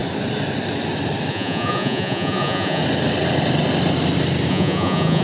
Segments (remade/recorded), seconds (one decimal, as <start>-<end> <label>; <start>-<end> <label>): 0.0-1.3 recorded; 1.3-2.8 remade; 2.8-4.5 recorded; 4.5-5.2 remade